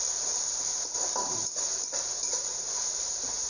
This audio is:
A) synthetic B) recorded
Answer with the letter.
A